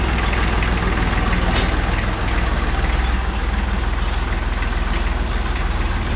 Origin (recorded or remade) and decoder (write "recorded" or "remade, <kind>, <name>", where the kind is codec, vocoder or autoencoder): recorded